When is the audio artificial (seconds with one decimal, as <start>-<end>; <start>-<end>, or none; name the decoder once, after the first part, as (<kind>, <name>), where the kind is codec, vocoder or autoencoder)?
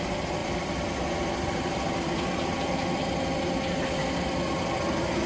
0.4-2.7 (vocoder, BigVGAN v2)